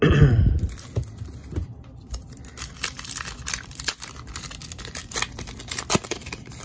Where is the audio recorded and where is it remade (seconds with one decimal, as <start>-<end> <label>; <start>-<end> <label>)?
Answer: 0.0-1.6 recorded; 1.6-4.3 remade; 4.3-5.0 recorded; 5.0-5.8 remade; 5.8-6.6 recorded